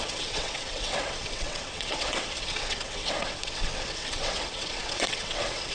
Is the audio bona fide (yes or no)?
no